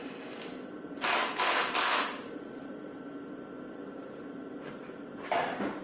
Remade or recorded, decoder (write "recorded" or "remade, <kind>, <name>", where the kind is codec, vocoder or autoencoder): recorded